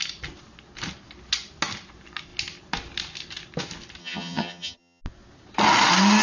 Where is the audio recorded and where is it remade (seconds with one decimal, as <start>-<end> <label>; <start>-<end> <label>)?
0.0-4.0 recorded; 4.0-5.0 remade; 5.0-6.2 recorded